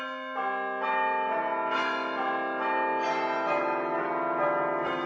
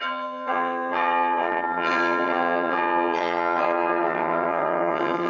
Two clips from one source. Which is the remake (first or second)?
second